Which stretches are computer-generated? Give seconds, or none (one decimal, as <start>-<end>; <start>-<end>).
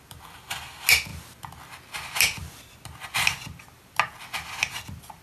none